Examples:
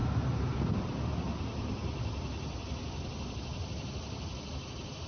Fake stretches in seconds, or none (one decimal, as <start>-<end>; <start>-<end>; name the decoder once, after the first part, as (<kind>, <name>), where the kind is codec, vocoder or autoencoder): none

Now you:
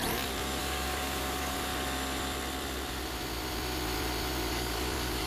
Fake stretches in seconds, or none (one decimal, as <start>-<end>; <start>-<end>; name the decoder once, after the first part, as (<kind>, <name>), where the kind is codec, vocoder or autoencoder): 0.6-1.7 (codec, DAC); 4.5-5.3

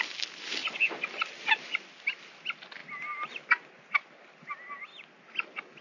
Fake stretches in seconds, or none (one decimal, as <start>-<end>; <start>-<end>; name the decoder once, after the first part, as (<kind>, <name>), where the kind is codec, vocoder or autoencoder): none